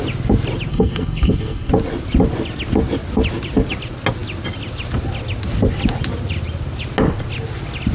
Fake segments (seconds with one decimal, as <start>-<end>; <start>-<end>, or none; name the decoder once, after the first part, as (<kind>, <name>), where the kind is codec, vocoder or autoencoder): 0.7-1.7 (codec, SNAC)